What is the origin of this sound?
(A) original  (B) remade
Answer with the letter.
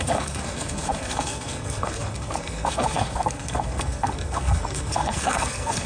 B